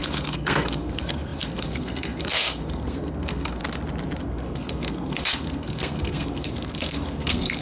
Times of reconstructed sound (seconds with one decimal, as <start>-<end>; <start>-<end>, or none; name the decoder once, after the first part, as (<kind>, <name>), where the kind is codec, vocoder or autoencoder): 0.0-3.6 (codec, SNAC); 4.2-7.6

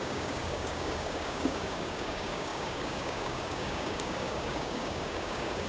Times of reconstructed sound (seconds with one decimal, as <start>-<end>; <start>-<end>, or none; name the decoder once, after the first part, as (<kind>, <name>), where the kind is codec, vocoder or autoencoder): 0.0-5.7 (codec, DAC)

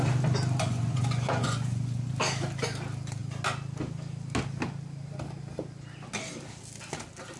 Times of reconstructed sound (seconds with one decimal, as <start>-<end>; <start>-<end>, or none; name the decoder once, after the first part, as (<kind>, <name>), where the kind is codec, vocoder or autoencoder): 0.7-2.1 (vocoder, Vocos)

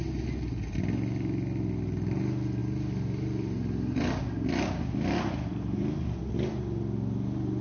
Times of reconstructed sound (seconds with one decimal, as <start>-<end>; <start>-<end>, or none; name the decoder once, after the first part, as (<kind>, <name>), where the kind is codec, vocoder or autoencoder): none

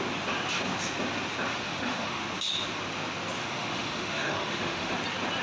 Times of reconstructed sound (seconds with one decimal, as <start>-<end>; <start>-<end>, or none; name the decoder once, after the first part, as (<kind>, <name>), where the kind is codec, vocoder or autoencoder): 1.5-2.2 (autoencoder, DAC-VAE); 3.4-4.9

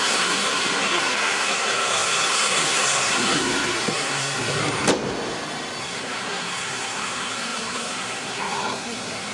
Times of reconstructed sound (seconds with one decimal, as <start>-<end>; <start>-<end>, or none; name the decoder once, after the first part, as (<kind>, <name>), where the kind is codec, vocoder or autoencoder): 0.0-4.6 (codec, SNAC); 5.8-9.3

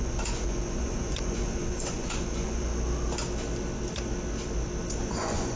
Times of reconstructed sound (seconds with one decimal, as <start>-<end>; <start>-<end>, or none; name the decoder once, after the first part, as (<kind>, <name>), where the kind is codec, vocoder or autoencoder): 0.0-2.7 (vocoder, Vocos); 5.0-5.6

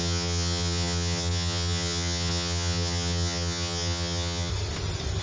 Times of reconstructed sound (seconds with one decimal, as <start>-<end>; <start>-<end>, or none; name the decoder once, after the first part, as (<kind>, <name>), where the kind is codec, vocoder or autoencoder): 0.0-4.5 (vocoder, HiFi-GAN)